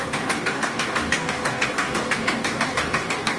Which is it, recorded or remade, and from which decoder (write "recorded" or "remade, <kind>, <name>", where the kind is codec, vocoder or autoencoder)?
remade, codec, DAC